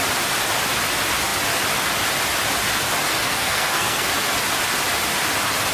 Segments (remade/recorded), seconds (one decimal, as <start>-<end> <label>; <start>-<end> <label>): 0.0-3.1 recorded; 3.1-4.1 remade; 4.1-5.7 recorded